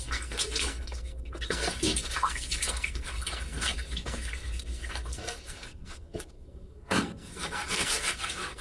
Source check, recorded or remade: remade